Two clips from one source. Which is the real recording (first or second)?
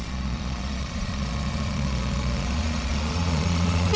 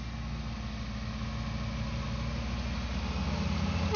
second